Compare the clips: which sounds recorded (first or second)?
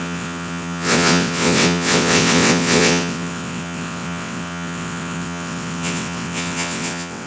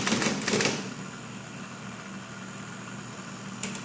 second